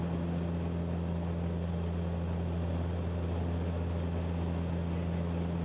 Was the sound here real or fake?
real